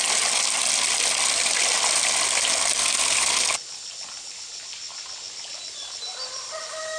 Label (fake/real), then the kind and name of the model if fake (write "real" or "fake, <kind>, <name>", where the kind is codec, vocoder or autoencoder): real